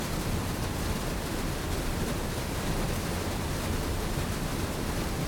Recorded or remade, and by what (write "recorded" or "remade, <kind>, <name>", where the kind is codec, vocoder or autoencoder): recorded